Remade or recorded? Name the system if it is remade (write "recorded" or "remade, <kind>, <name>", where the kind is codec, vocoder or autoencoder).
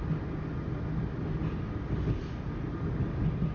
recorded